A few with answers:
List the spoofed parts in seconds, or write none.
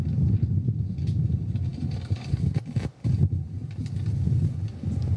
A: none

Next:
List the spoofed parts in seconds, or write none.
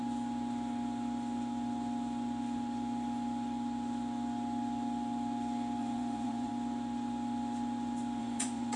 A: 5.8-6.5; 8.2-8.8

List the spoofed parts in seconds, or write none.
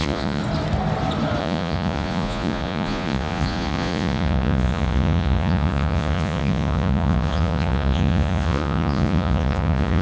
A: 0.0-0.4; 1.4-10.0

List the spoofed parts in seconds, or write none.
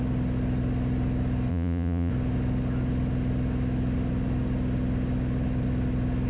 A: 1.5-2.1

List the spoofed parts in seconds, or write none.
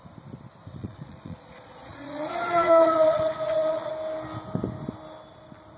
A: 0.8-3.9